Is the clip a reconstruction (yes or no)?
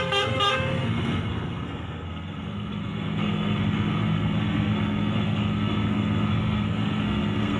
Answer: yes